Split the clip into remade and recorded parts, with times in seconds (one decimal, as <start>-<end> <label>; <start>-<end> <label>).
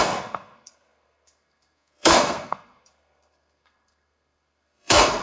0.0-5.2 remade